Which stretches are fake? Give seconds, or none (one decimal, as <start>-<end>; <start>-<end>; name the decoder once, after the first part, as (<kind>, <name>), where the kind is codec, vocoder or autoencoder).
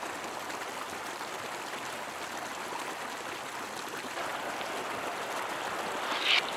none